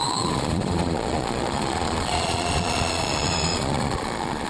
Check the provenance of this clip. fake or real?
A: fake